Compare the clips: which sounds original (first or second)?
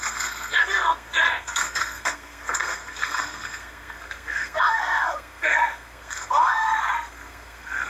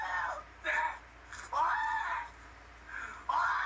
second